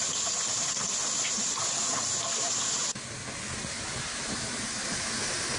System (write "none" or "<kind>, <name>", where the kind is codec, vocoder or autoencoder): none